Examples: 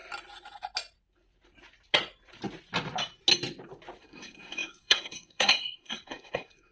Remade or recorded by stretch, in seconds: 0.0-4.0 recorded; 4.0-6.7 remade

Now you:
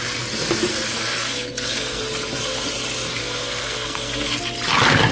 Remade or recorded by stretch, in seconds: 0.0-0.7 recorded; 0.7-2.0 remade; 2.0-3.2 recorded; 3.2-4.4 remade; 4.4-5.1 recorded

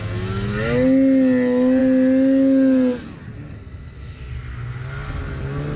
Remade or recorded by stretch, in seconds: 0.0-5.8 recorded

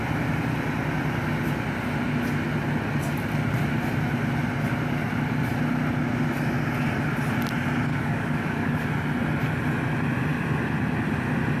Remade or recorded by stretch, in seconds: 0.0-7.9 recorded; 7.9-8.8 remade; 8.8-11.6 recorded